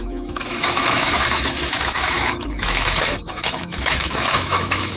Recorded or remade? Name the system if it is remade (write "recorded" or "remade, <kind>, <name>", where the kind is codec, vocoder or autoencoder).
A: remade, autoencoder, DAC-VAE